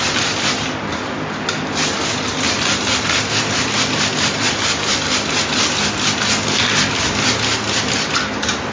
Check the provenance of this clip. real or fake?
real